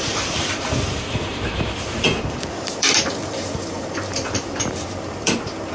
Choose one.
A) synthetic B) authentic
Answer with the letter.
A